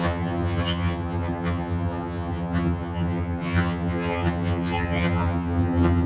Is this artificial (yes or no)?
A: yes